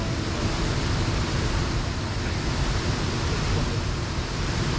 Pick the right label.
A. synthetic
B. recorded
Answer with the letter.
B